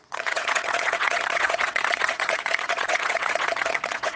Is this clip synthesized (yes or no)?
yes